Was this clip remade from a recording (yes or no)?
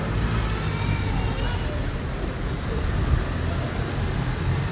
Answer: no